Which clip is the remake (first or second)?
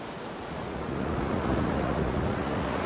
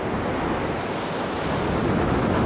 first